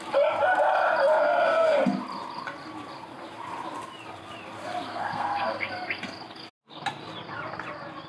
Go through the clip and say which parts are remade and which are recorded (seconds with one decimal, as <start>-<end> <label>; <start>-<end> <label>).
0.0-1.1 recorded; 1.1-1.8 remade; 1.8-4.9 recorded; 4.9-5.7 remade; 5.7-8.1 recorded